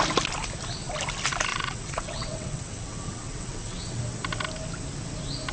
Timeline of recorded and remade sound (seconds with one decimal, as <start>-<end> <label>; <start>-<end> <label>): 0.0-1.5 recorded; 1.5-4.0 remade; 4.0-5.5 recorded